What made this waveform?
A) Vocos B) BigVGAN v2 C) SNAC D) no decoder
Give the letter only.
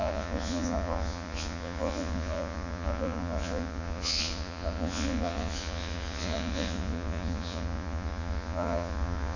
A